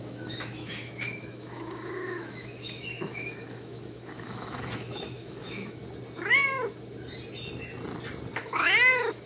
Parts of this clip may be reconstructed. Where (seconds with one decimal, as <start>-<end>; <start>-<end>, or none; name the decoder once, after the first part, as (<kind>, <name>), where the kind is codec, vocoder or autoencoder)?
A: 0.0-5.8 (autoencoder, DAC-VAE); 8.4-9.3